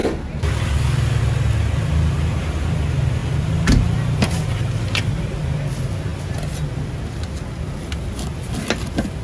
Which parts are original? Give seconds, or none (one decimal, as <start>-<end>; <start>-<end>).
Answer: 0.0-9.2